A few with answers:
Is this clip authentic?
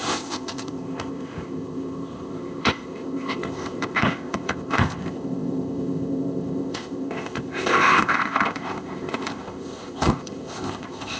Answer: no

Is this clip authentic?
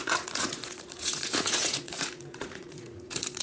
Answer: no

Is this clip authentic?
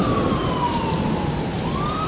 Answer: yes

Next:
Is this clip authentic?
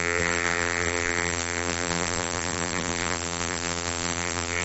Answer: no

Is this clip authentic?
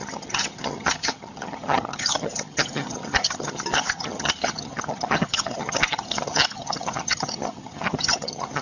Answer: no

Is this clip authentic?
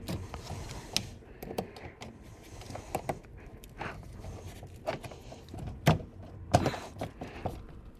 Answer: yes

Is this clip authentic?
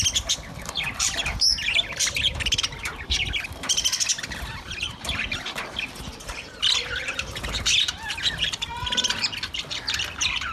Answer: no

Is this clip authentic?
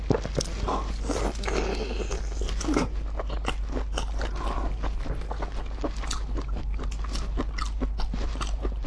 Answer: yes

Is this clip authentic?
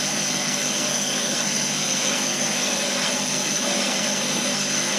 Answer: no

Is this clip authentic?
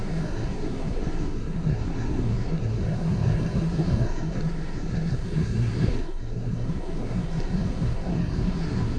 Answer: no